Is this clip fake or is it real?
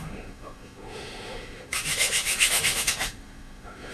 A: fake